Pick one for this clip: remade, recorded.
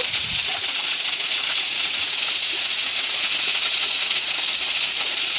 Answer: remade